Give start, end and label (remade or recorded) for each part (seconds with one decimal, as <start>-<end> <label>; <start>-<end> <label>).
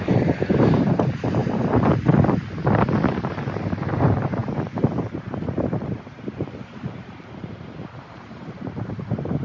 0.0-1.4 remade; 1.4-3.2 recorded; 3.2-9.4 remade